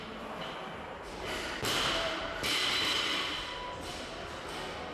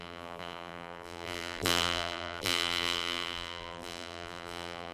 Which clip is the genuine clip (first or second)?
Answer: first